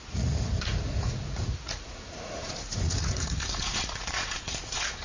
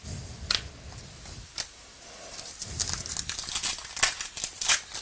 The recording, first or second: second